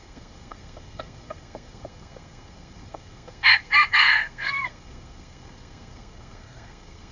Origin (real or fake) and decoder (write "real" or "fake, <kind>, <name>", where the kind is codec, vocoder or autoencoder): fake, codec, SNAC